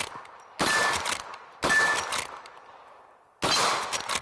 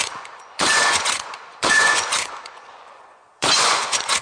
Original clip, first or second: first